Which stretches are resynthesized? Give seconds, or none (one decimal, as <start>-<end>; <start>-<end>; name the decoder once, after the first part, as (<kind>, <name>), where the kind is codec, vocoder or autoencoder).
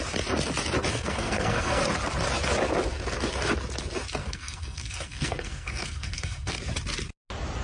0.9-1.8 (codec, SNAC); 4.2-6.7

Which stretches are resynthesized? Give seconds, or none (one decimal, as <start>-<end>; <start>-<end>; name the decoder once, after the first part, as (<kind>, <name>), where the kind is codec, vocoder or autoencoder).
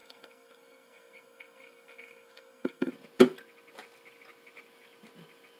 0.0-2.9 (codec, SNAC)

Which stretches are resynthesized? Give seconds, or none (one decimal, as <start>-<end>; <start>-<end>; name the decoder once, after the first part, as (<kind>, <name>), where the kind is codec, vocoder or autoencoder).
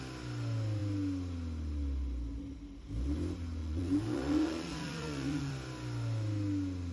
3.6-5.5 (vocoder, Vocos)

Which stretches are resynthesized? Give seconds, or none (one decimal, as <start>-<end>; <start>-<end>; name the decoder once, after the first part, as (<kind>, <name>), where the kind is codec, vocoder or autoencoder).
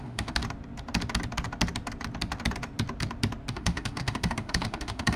0.0-0.4 (autoencoder, DAC-VAE); 3.5-5.2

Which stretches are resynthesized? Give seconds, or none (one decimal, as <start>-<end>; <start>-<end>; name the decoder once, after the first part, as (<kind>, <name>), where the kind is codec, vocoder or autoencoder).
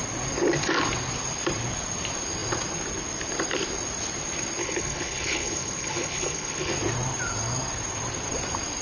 4.6-6.7 (codec, HILCodec)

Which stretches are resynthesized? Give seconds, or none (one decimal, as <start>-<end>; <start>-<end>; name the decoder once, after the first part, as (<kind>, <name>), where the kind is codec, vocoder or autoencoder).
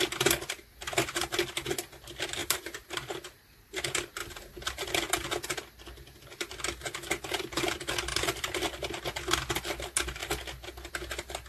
2.4-3.4 (vocoder, BigVGAN v2); 4.2-4.9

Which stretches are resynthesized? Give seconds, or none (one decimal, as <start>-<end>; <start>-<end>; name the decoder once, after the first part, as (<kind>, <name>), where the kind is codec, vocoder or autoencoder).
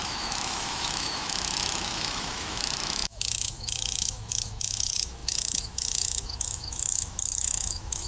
0.0-8.1 (autoencoder, DAC-VAE)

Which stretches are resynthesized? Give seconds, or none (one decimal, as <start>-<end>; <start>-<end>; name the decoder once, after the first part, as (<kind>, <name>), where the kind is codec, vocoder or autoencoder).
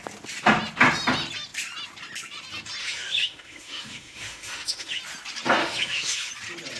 2.8-5.0 (autoencoder, DAC-VAE); 5.6-6.3